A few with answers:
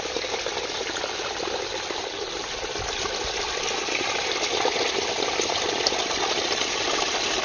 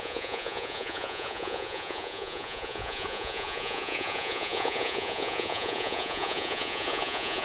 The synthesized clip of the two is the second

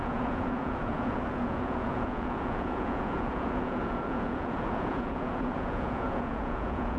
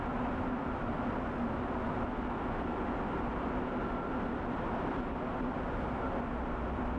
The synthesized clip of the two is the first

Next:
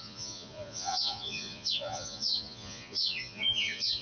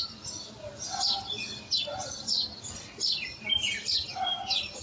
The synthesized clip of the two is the first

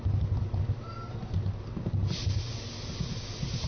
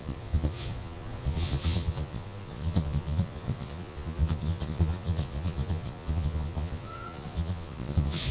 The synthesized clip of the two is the second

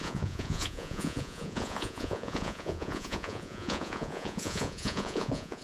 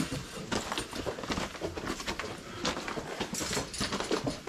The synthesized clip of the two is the first